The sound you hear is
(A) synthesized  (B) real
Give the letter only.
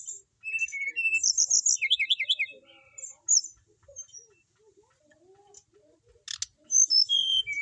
B